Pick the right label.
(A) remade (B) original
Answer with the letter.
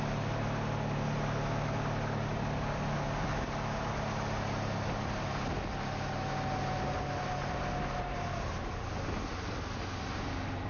B